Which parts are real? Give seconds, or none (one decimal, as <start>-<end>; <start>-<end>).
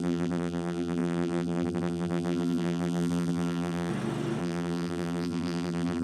3.9-4.4